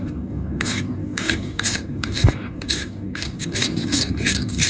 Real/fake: fake